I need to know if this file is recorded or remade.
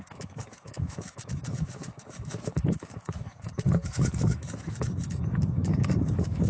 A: remade